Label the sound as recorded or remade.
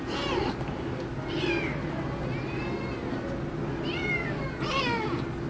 recorded